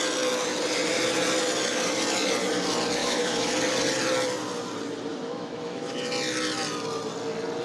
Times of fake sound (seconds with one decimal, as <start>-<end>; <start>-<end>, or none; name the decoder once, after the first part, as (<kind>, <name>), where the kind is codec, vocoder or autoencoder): 3.0-3.5 (autoencoder, DAC-VAE); 5.1-5.9